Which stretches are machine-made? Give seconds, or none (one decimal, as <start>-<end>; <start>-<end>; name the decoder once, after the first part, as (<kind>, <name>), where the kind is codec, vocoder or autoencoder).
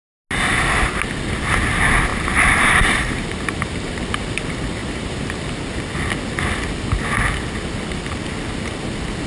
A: 2.1-4.0 (vocoder, BigVGAN v2); 4.8-5.4